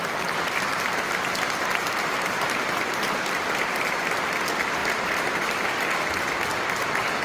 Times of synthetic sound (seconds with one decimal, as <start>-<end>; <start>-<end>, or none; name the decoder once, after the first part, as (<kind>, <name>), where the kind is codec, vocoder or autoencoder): 2.1-4.0 (vocoder, BigVGAN v2); 4.8-5.7